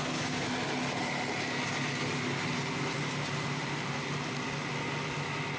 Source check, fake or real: real